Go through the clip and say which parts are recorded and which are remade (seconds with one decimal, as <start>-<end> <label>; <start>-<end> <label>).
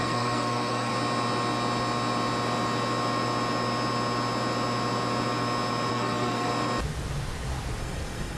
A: 0.0-0.9 remade; 0.9-5.9 recorded; 5.9-6.5 remade; 6.5-7.8 recorded; 7.8-8.4 remade